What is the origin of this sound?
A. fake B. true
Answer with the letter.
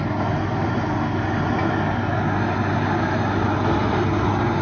B